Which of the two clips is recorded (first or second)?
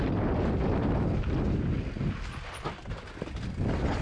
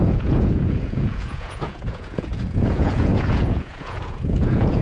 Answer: first